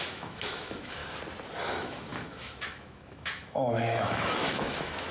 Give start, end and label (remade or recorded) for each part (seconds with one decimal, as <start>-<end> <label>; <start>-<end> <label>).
0.0-1.0 remade; 1.0-1.6 recorded; 1.6-5.1 remade